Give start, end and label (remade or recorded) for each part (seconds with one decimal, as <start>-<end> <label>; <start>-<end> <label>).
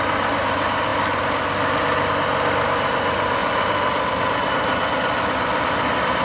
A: 0.0-6.2 recorded